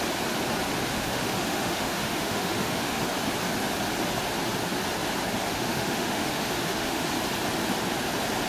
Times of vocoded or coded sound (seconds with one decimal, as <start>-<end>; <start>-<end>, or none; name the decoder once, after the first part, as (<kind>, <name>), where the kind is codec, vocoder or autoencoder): 0.9-3.0 (autoencoder, DAC-VAE); 5.5-7.1